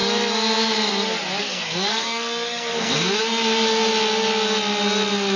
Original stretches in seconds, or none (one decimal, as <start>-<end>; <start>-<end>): 0.0-1.4; 3.2-5.4